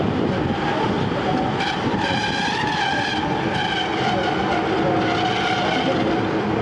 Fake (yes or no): no